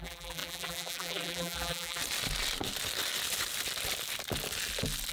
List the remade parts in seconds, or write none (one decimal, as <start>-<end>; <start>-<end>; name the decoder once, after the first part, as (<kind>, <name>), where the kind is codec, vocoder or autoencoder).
0.0-2.0 (vocoder, BigVGAN v2)